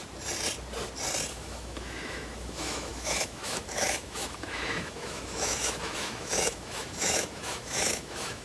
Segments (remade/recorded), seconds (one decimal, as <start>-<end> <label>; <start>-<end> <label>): 0.0-1.3 recorded; 1.3-8.4 remade